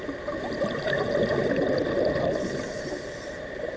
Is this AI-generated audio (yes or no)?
no